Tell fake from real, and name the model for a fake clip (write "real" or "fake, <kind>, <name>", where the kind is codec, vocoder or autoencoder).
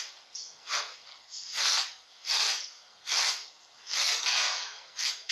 fake, codec, SNAC